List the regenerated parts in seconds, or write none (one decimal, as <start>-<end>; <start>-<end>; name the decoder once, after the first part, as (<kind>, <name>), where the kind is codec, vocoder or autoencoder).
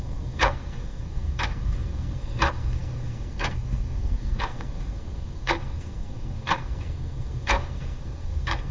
0.0-8.7 (codec, SNAC)